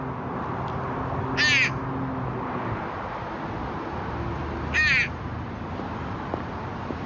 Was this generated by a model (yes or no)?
no